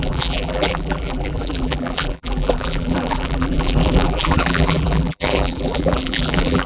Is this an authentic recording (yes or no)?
no